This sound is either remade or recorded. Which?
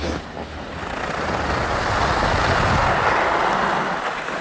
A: recorded